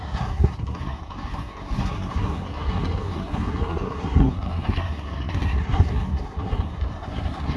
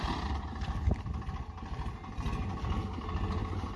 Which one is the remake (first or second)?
first